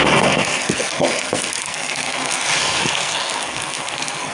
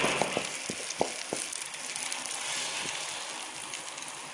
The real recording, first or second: second